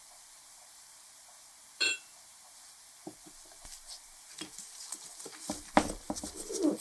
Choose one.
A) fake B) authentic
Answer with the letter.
A